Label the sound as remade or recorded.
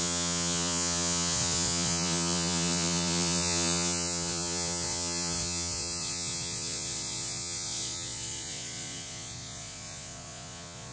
remade